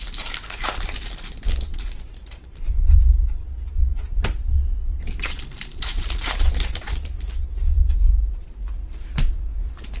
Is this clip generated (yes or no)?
yes